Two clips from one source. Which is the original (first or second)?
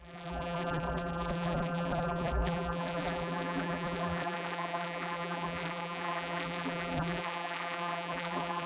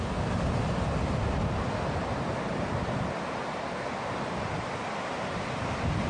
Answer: second